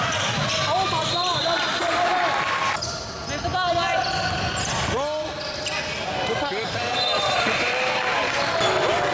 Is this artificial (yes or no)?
no